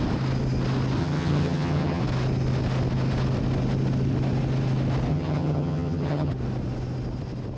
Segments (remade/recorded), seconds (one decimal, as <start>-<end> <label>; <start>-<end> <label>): 0.0-1.0 recorded; 1.0-2.0 remade; 2.0-5.1 recorded; 5.1-6.3 remade; 6.3-7.6 recorded